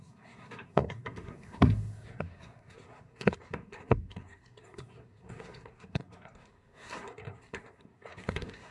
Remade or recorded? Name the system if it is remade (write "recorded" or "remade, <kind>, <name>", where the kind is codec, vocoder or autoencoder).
remade, codec, SNAC